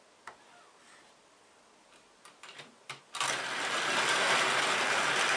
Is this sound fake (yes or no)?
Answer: no